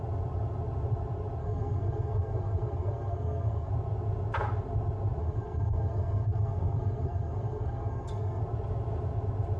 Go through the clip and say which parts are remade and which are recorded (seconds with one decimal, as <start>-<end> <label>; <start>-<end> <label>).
0.0-1.4 recorded; 1.4-3.7 remade; 3.7-5.2 recorded; 5.2-8.4 remade; 8.4-9.6 recorded